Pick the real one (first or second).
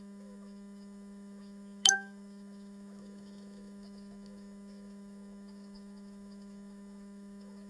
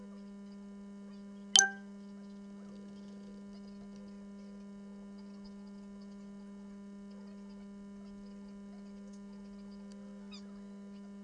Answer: second